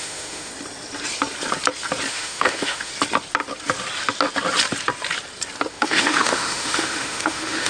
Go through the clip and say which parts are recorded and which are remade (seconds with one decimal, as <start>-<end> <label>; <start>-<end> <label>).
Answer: 0.0-0.5 remade; 0.5-2.1 recorded; 2.1-2.9 remade; 2.9-5.7 recorded; 5.7-7.7 remade